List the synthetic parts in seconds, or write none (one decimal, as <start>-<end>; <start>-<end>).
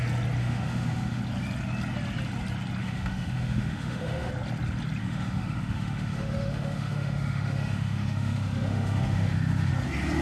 0.4-1.2; 2.8-4.3; 5.0-9.7